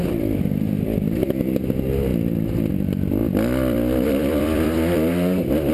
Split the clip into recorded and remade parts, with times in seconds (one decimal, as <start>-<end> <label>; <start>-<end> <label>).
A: 0.0-2.1 remade; 2.1-2.7 recorded; 2.7-5.7 remade